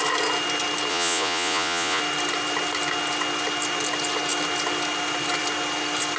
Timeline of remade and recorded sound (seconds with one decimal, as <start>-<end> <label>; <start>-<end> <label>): 0.0-0.9 recorded; 0.9-2.0 remade; 2.0-6.2 recorded